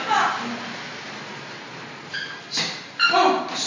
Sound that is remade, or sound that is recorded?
recorded